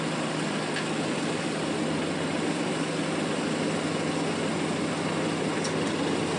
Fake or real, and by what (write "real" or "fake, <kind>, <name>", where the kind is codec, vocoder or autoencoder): real